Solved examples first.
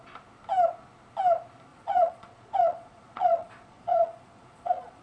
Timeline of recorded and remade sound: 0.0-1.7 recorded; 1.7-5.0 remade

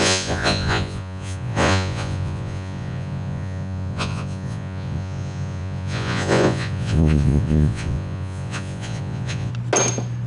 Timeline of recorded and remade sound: 0.0-9.5 remade; 9.5-10.3 recorded

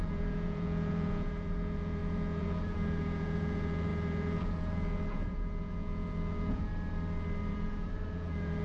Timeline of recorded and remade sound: 0.0-6.7 remade; 6.7-7.5 recorded; 7.5-8.6 remade